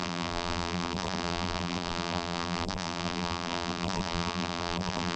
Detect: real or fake fake